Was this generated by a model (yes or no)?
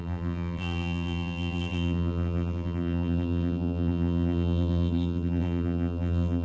yes